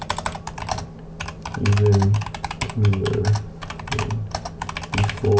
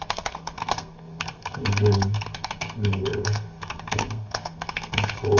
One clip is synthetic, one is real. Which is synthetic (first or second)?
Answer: second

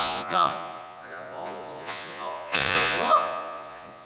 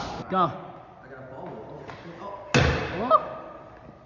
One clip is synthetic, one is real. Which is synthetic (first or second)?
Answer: first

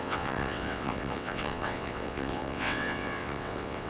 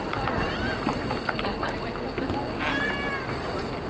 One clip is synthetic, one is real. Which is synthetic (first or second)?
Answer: first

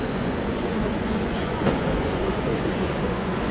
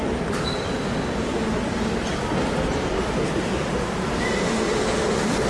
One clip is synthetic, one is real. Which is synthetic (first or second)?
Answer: first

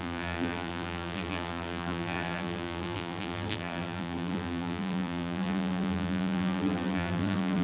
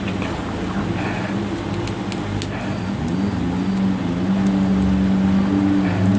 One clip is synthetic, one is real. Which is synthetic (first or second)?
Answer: first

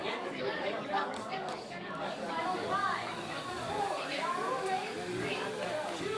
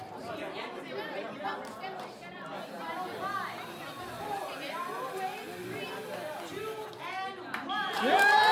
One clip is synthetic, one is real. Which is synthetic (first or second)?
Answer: first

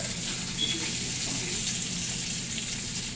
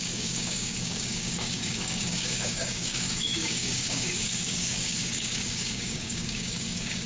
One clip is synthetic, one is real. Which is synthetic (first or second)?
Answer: second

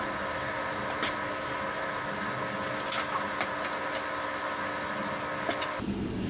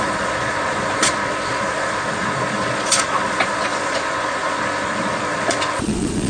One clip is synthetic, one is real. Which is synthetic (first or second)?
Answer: second